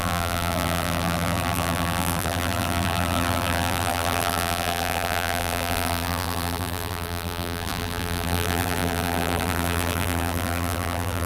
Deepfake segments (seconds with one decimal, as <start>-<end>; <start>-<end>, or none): 0.0-11.3